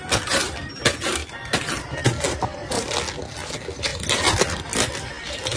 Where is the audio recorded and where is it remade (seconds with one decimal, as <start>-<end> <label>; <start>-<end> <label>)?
0.0-5.6 recorded